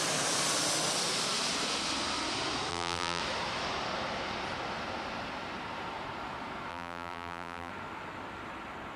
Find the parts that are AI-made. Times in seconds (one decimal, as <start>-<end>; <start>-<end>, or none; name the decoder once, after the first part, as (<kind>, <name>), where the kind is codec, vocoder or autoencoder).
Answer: 2.7-3.2 (vocoder, BigVGAN v2); 6.7-7.7